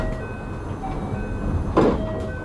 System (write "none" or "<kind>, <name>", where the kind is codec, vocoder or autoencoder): none